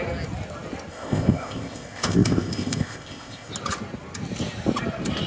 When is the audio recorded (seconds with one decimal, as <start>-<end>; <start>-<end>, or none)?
0.0-0.9; 3.5-5.3